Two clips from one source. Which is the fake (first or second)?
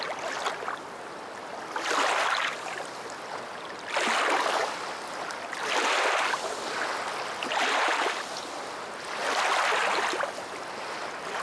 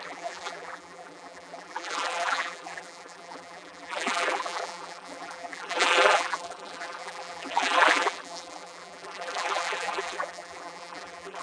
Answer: second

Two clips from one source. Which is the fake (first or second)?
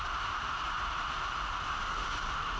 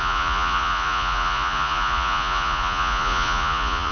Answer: second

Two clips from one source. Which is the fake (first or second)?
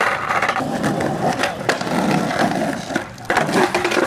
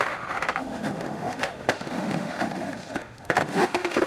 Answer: second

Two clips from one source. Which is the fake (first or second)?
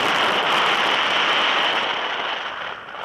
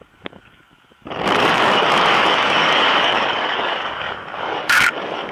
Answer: second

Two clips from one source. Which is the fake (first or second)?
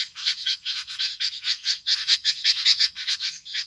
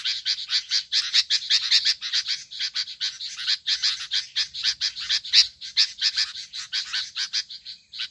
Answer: first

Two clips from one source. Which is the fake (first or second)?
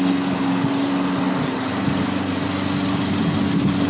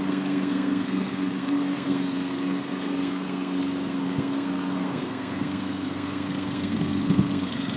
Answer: second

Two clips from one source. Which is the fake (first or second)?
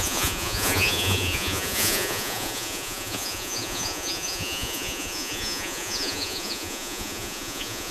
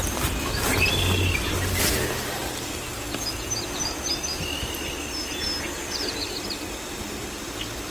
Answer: first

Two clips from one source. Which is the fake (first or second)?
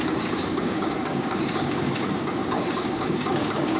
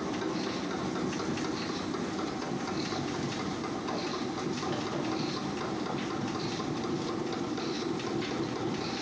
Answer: first